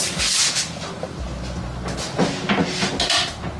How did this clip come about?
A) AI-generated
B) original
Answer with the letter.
B